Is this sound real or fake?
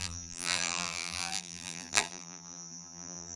fake